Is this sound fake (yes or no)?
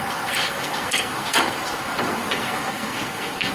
yes